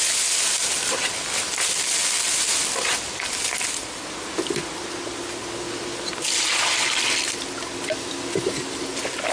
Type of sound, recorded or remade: recorded